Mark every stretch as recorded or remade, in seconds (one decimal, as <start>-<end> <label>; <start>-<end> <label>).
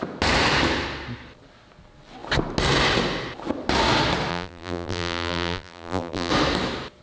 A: 0.0-4.3 recorded; 4.3-6.3 remade; 6.3-7.0 recorded